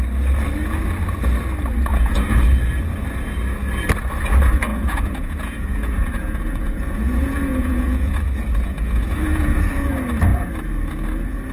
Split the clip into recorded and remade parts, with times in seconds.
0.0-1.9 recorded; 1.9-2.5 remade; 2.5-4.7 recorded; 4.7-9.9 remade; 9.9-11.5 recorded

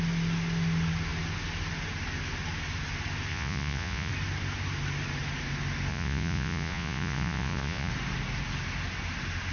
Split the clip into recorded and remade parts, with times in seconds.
0.0-3.3 recorded; 3.3-4.1 remade; 4.1-5.9 recorded; 5.9-7.9 remade; 7.9-9.5 recorded

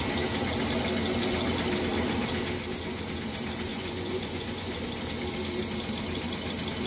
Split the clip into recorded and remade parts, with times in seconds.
0.0-3.7 recorded; 3.7-4.7 remade; 4.7-6.9 recorded

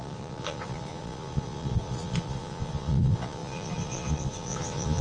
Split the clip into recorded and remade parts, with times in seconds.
0.0-5.0 remade

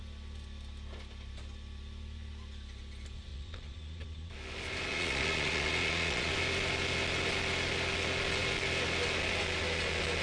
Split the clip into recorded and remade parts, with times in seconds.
0.0-3.3 recorded; 3.3-4.3 remade; 4.3-4.9 recorded; 4.9-6.3 remade; 6.3-10.2 recorded